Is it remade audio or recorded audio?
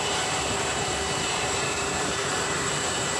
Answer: remade